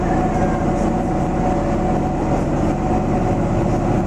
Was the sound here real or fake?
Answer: real